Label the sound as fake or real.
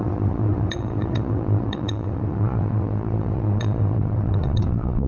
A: fake